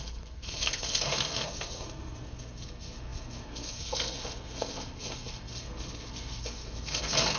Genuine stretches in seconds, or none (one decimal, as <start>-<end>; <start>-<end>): none